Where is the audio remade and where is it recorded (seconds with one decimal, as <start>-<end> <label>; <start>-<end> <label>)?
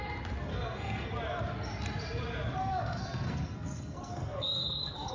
0.0-0.5 recorded; 0.5-1.1 remade; 1.1-2.6 recorded; 2.6-5.1 remade